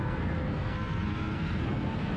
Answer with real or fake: fake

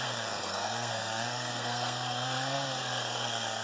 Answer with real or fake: fake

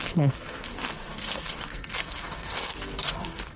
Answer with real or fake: fake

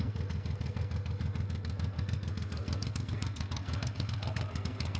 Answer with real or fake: fake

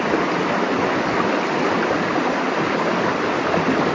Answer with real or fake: real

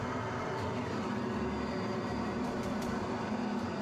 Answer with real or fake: real